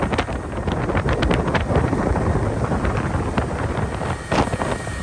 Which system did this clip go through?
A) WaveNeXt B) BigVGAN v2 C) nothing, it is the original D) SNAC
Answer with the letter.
C